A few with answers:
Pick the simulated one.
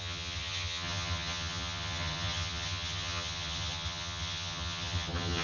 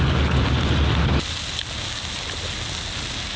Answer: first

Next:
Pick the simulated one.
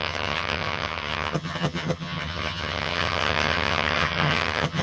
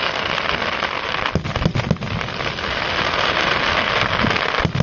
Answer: first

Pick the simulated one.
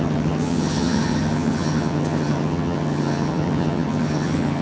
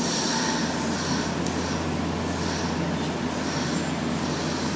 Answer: first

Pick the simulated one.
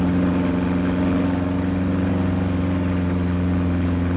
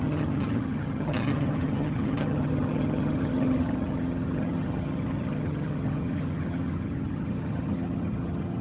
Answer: second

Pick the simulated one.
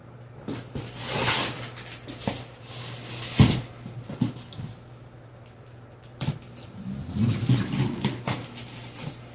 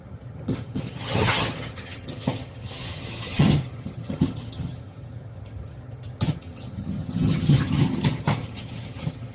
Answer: second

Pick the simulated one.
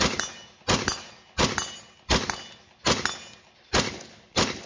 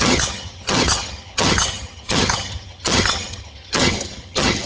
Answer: second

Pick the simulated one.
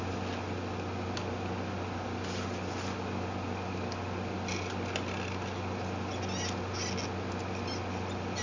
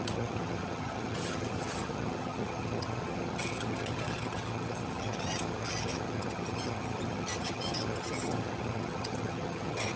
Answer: second